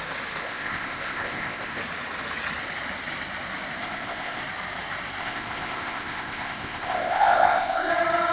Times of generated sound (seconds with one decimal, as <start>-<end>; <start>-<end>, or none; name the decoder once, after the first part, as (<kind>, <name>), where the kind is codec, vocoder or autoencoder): 0.4-1.8 (codec, ZipCodec); 3.8-4.4; 5.2-7.9